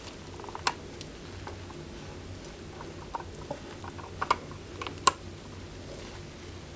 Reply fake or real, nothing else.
real